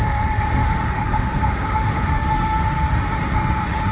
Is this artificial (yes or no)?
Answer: yes